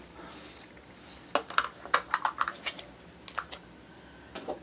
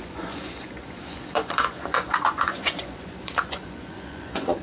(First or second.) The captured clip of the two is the first